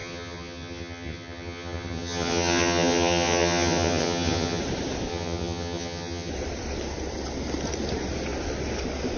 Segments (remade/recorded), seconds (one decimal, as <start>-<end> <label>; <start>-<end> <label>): 0.0-4.6 remade; 4.6-5.1 recorded; 5.1-6.3 remade; 6.3-9.2 recorded